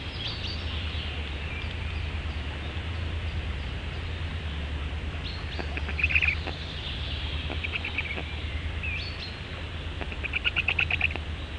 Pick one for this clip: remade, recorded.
recorded